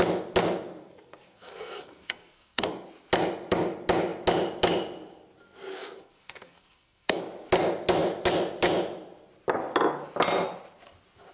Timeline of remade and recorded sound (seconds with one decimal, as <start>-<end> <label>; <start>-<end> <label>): 0.0-0.8 recorded; 0.8-2.7 remade; 2.7-5.7 recorded; 5.7-7.2 remade; 7.2-11.3 recorded